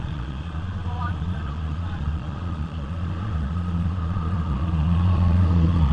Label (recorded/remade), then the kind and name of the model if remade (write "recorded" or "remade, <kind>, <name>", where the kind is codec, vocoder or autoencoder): remade, vocoder, Vocos